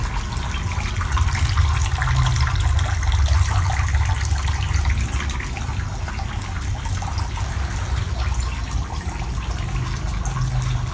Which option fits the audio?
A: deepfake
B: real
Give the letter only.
B